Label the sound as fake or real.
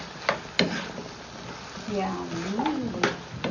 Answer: real